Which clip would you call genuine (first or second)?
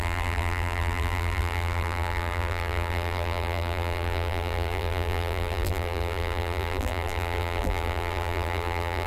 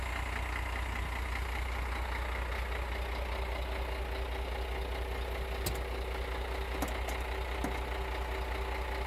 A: second